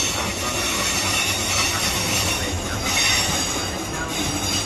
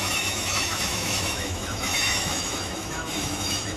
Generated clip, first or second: second